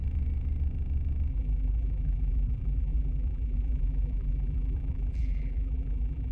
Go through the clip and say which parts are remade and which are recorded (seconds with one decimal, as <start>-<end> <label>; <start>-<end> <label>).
0.0-1.3 recorded; 1.3-6.3 remade